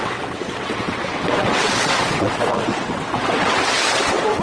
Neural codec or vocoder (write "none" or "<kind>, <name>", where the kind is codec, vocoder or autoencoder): vocoder, WaveNeXt